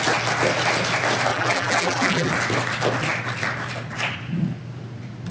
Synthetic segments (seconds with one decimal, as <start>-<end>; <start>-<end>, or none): 1.3-2.3